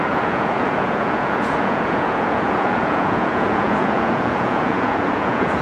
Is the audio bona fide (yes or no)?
no